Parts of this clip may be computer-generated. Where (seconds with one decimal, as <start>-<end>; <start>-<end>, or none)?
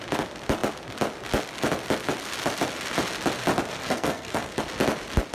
3.8-4.6